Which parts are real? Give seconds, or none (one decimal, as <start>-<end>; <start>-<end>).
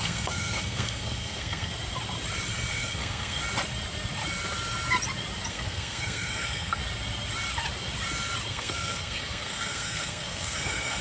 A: 1.7-2.7; 3.4-5.5; 6.8-8.5